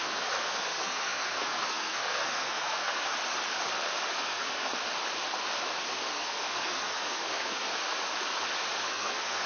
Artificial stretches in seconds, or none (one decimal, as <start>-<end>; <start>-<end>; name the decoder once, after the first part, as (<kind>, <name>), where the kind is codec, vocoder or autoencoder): 0.0-3.1 (codec, SNAC); 4.1-4.7; 6.1-7.7; 8.9-9.5